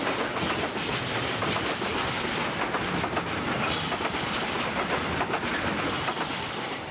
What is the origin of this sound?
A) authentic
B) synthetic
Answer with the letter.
A